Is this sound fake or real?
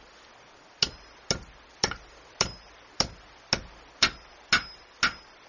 real